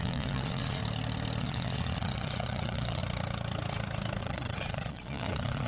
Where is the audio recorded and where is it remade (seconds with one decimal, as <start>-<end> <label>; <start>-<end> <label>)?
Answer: 0.0-0.8 remade; 0.8-1.4 recorded; 1.4-3.0 remade; 3.0-4.2 recorded; 4.2-5.7 remade